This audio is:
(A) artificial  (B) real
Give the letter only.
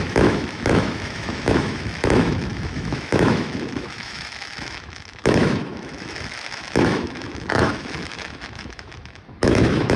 A